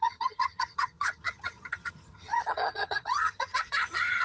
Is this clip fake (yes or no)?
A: yes